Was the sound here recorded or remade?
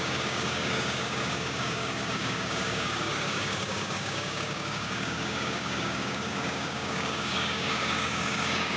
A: remade